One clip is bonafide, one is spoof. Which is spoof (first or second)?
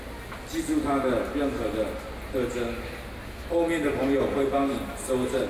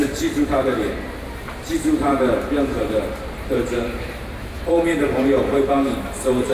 second